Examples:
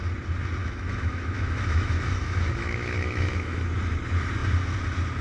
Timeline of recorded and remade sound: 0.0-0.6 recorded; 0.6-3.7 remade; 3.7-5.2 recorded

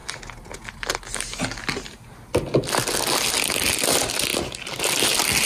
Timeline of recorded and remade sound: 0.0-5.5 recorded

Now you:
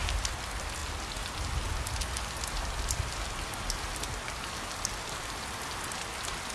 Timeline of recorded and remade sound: 0.0-6.5 recorded